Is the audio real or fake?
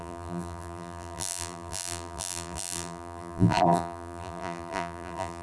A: fake